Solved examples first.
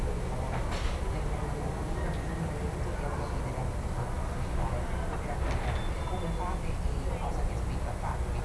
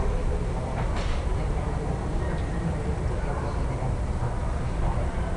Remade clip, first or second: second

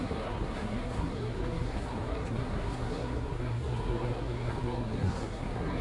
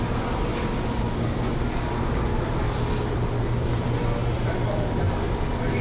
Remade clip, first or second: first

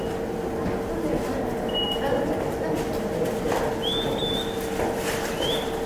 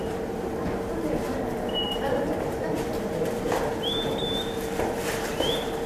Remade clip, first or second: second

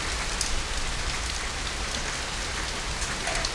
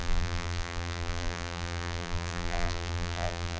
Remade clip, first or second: second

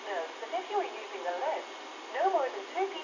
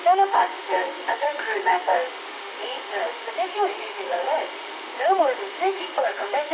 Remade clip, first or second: second